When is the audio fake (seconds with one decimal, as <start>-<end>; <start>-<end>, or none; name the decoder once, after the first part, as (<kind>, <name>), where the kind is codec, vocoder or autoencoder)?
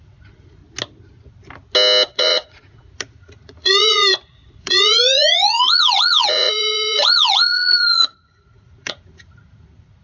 0.0-0.6 (vocoder, Vocos); 2.1-10.0